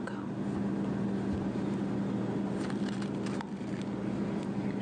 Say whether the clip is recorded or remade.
recorded